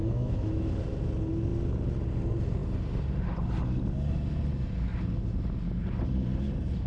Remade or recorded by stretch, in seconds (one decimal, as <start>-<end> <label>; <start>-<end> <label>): 0.0-0.7 remade; 0.7-6.9 recorded